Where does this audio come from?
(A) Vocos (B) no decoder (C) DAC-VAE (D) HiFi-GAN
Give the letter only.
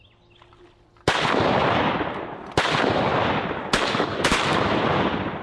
B